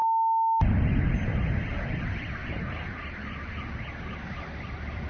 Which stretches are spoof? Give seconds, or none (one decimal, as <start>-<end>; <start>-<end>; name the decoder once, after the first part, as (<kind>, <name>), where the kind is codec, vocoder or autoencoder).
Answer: none